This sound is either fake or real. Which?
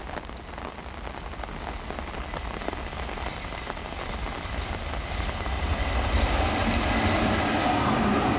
real